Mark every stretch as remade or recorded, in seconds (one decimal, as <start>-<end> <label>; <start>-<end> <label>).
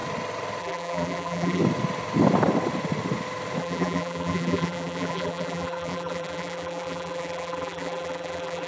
0.0-0.6 recorded; 0.6-1.6 remade; 1.6-3.6 recorded; 3.6-8.7 remade